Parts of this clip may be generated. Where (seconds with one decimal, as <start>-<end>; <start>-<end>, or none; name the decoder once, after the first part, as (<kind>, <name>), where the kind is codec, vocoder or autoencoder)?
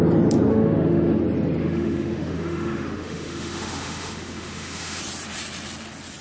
0.5-1.2 (autoencoder, DAC-VAE); 1.6-5.0